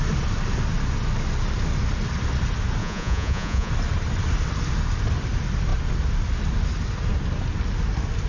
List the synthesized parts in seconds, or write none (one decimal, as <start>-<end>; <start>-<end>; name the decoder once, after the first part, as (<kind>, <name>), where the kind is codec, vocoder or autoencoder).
2.8-3.7 (vocoder, Vocos)